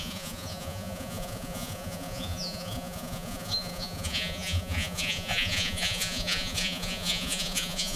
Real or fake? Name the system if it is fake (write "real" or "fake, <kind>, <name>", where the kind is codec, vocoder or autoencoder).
fake, vocoder, Vocos